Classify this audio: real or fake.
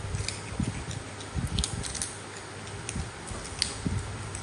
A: real